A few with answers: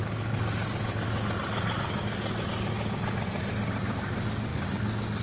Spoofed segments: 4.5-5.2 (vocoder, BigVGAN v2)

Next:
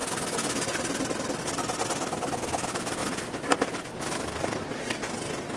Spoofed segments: 4.4-4.9 (vocoder, BigVGAN v2)

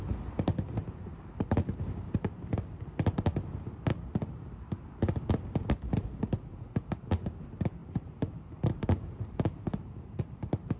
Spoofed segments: 1.1-2.8 (vocoder, BigVGAN v2); 7.8-10.2

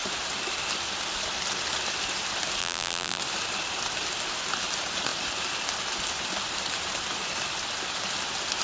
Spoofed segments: 2.6-3.2 (vocoder, BigVGAN v2)